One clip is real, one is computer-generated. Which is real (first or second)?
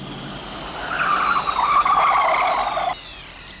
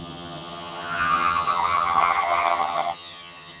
first